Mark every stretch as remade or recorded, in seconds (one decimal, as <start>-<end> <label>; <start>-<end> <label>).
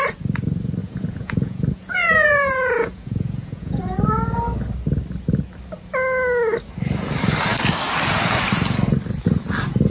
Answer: 0.0-0.8 recorded; 0.8-3.8 remade; 3.8-9.9 recorded